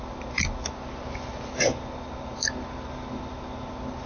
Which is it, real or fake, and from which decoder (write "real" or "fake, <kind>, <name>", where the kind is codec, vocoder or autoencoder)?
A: real